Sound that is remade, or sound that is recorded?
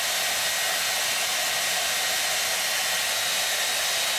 recorded